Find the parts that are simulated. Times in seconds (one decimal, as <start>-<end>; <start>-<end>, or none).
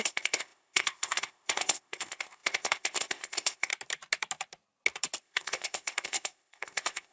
0.0-3.7; 5.2-7.1